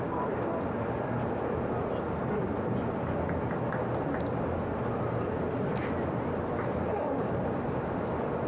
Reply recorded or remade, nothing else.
recorded